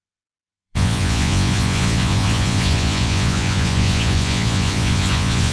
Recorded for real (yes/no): no